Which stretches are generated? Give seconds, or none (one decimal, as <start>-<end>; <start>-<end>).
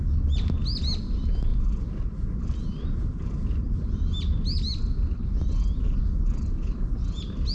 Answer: none